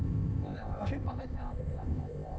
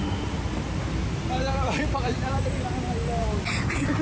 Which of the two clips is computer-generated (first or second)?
first